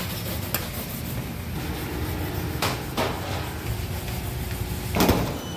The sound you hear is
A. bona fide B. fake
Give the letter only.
A